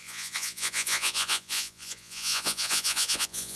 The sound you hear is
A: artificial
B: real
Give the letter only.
A